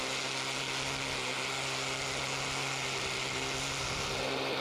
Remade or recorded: recorded